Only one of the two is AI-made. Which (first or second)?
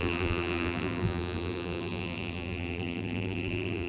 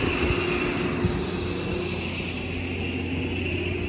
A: first